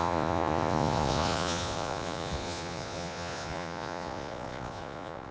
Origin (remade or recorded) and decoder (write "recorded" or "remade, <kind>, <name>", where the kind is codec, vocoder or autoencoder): remade, vocoder, Vocos